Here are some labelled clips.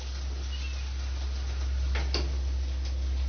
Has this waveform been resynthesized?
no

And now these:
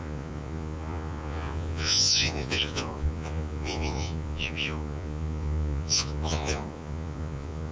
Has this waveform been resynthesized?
yes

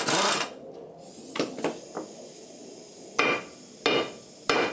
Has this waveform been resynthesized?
no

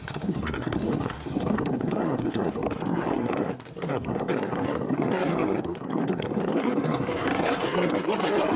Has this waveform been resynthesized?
yes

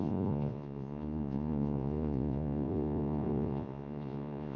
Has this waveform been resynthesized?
yes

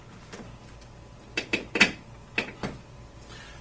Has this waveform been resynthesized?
yes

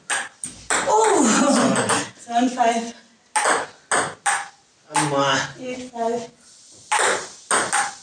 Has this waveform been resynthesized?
no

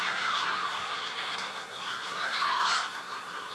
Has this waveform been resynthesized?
yes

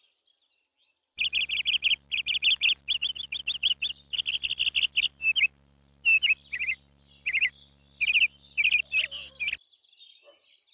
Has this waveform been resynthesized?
no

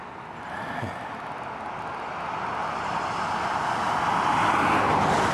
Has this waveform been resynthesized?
no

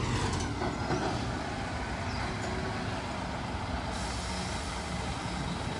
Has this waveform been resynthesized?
no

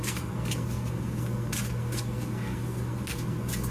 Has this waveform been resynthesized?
yes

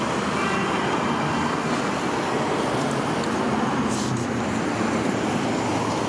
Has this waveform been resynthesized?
no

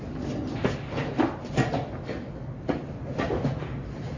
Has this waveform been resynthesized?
no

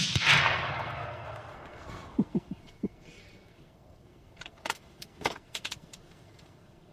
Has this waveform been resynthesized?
yes